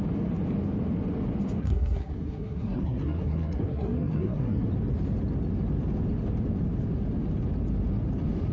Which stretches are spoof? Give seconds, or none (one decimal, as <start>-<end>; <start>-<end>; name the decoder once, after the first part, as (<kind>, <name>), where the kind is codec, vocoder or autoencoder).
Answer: 1.6-4.7 (codec, SNAC)

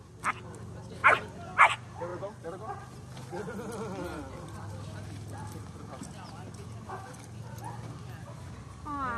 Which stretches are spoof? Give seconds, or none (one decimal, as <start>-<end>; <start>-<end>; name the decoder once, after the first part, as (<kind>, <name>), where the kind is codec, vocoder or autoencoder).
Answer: none

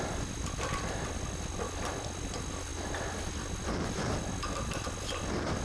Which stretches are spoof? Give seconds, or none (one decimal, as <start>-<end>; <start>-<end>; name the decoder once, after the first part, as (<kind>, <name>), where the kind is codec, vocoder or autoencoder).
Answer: none

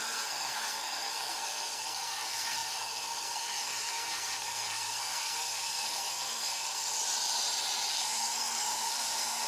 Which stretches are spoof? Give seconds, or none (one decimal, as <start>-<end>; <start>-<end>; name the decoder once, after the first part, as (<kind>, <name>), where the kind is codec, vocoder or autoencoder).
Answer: 0.0-6.9 (codec, SNAC); 7.9-9.5

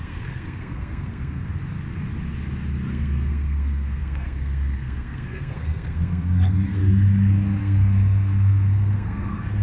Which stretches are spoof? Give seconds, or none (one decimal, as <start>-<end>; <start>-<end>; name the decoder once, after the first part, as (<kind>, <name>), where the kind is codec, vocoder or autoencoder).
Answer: 0.0-1.4 (codec, SNAC); 2.9-6.8; 7.6-9.6

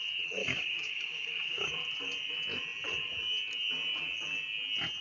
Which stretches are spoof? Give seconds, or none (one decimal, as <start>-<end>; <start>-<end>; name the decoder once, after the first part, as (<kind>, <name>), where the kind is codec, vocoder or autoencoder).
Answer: 0.4-1.7 (codec, DAC)

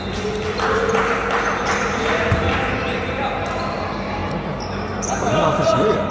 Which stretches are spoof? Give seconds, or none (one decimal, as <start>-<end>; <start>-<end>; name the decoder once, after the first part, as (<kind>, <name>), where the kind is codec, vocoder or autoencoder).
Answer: 0.0-1.0 (vocoder, BigVGAN v2); 1.5-4.2; 5.1-6.1

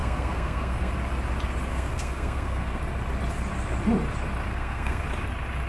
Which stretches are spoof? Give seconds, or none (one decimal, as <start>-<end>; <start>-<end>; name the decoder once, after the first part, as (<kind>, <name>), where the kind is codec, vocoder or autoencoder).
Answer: 0.0-0.9 (codec, SNAC); 1.7-2.8; 4.5-5.0